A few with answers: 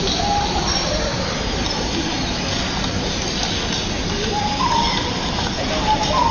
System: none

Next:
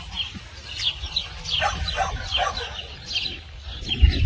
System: none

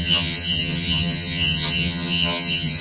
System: vocoder, HiFi-GAN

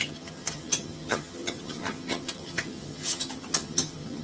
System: vocoder, HiFi-GAN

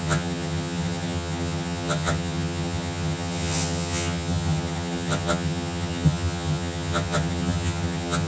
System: vocoder, HiFi-GAN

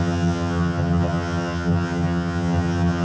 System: vocoder, HiFi-GAN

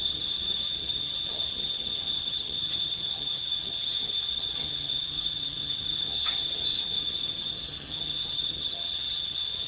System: vocoder, HiFi-GAN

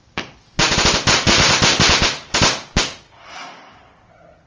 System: none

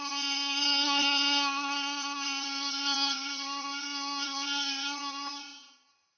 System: vocoder, HiFi-GAN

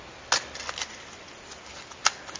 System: none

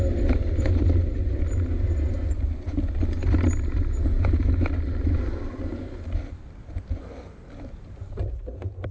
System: none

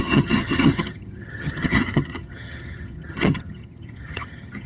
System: vocoder, HiFi-GAN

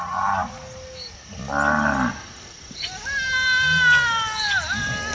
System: none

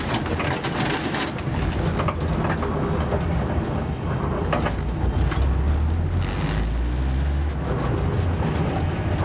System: none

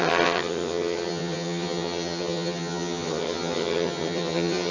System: vocoder, HiFi-GAN